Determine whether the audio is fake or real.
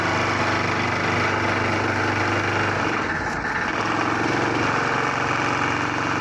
real